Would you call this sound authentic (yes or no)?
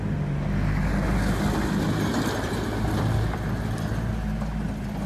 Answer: yes